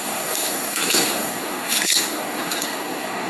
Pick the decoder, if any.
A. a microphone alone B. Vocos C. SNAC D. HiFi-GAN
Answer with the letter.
C